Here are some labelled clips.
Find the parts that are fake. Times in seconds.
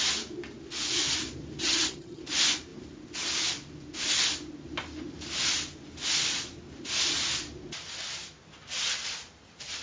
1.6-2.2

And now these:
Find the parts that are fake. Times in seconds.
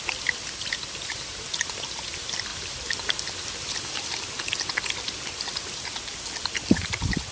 none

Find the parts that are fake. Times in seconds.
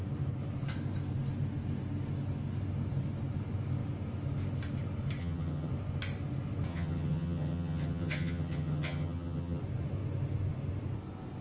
5.2-5.7; 6.7-9.6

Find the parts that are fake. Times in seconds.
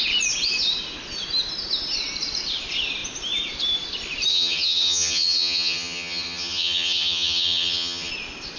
4.3-8.1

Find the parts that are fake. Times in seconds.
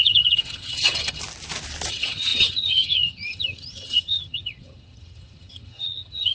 0.0-1.2; 1.9-6.3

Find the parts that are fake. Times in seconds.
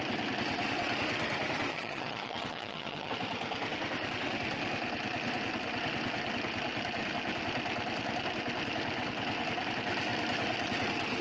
1.7-3.1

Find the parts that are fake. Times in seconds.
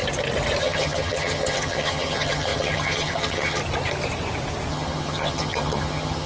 0.6-3.6; 4.7-6.3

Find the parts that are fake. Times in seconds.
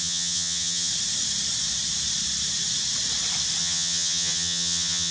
0.0-0.9; 3.6-5.1